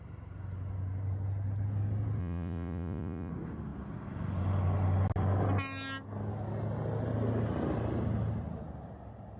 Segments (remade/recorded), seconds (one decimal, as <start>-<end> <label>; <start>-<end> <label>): 0.0-2.2 recorded; 2.2-3.3 remade; 3.3-9.4 recorded